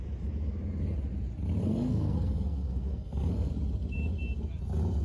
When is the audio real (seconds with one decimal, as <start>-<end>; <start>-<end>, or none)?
0.0-1.6; 3.5-5.0